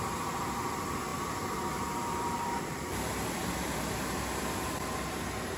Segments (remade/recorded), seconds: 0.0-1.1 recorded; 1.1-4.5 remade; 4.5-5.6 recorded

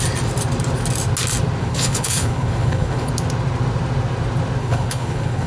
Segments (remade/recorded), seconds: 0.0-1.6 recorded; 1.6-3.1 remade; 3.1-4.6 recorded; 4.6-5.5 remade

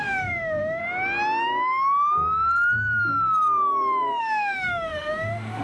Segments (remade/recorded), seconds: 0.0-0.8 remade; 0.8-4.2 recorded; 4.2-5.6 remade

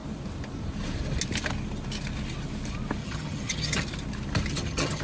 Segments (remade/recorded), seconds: 0.0-3.0 recorded; 3.0-3.8 remade; 3.8-4.5 recorded; 4.5-5.0 remade